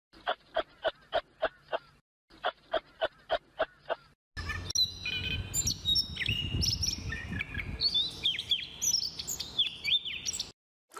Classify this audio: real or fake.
real